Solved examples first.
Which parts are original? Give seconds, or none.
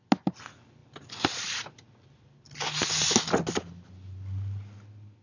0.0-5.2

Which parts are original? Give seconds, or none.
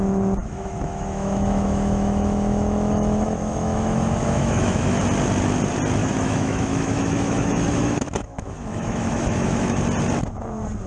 0.0-0.4; 5.0-6.0; 9.8-10.9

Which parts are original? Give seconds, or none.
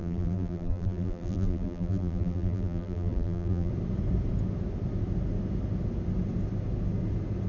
3.7-7.5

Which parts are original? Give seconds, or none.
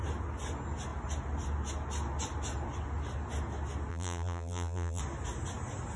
0.0-3.9; 5.0-6.0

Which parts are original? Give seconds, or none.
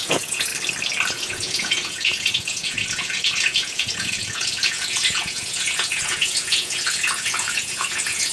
0.5-1.1